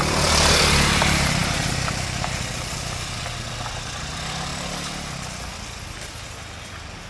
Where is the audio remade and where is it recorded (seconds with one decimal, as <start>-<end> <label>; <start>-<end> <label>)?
0.0-1.4 remade; 1.4-2.2 recorded; 2.2-4.5 remade; 4.5-7.1 recorded